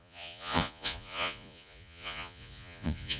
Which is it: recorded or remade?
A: remade